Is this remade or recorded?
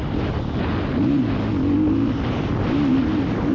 recorded